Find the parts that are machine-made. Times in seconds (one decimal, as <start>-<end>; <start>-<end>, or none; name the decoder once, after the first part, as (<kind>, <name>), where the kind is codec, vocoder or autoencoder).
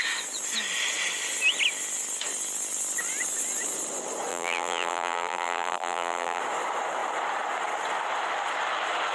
4.3-6.4 (vocoder, BigVGAN v2)